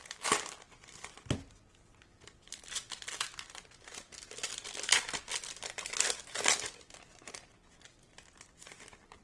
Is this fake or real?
real